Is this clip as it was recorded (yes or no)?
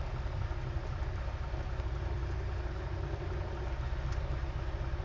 yes